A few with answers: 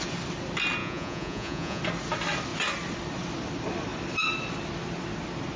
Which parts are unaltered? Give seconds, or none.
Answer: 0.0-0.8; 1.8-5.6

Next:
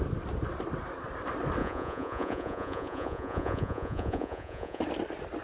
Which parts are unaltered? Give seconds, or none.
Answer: 0.0-1.6; 4.8-5.4

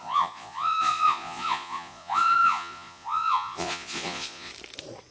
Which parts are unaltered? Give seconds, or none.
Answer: 4.5-5.1